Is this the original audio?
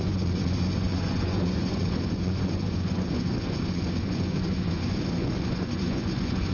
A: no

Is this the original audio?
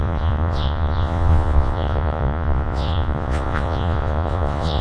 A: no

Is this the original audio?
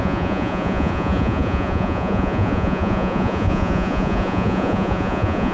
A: no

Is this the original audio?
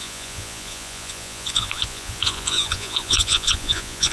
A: no